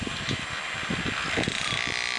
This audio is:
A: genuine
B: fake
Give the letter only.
A